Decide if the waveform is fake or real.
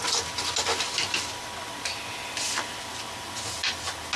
real